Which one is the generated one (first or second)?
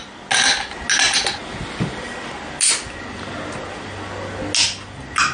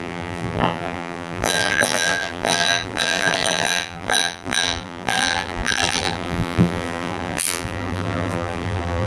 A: second